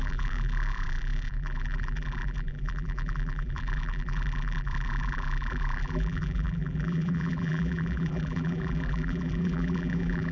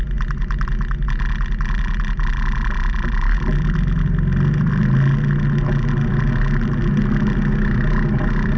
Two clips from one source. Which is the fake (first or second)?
first